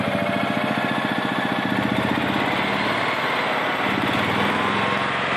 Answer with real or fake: real